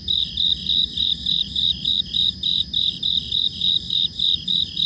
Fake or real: fake